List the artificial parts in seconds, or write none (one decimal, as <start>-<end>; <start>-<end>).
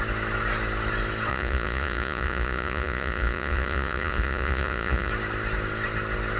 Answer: 1.3-5.1